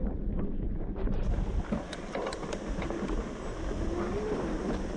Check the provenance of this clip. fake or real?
real